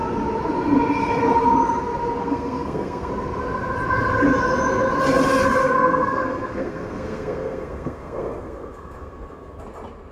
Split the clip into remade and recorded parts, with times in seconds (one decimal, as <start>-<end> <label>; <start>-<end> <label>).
0.0-2.2 recorded; 2.2-3.1 remade; 3.1-5.6 recorded; 5.6-9.6 remade; 9.6-10.1 recorded